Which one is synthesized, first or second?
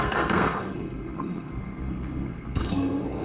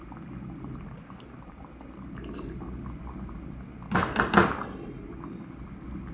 first